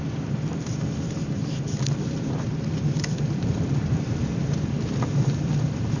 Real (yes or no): yes